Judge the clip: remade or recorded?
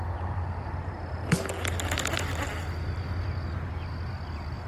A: recorded